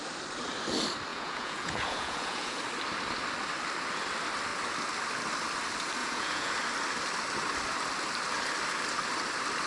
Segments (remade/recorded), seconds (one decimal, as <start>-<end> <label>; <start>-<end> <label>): 0.0-1.1 recorded; 1.1-2.6 remade; 2.6-6.0 recorded; 6.0-6.5 remade; 6.5-9.7 recorded